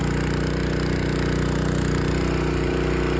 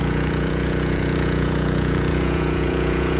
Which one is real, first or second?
first